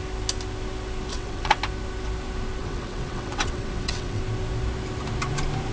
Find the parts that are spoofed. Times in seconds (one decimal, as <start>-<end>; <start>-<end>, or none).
1.1-1.6; 2.6-4.2